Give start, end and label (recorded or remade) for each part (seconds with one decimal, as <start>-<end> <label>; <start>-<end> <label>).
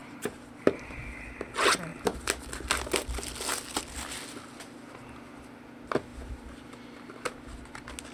0.0-1.0 remade; 1.0-6.1 recorded; 6.1-6.8 remade; 6.8-8.1 recorded